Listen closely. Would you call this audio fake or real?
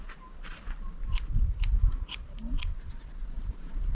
real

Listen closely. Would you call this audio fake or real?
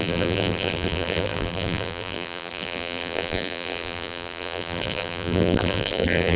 fake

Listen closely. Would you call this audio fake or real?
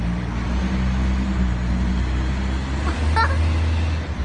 real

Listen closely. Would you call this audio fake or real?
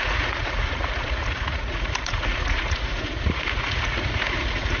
fake